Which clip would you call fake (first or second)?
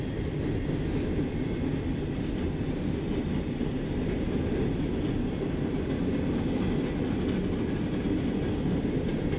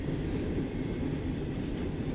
second